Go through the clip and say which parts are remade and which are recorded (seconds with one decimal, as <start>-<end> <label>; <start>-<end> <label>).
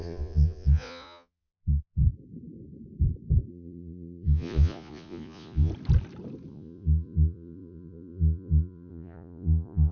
0.0-2.0 remade; 2.0-3.5 recorded; 3.5-5.7 remade; 5.7-6.5 recorded; 6.5-9.9 remade